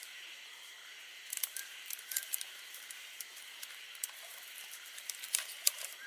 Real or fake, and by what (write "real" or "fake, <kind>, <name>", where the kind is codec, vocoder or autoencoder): fake, vocoder, BigVGAN v2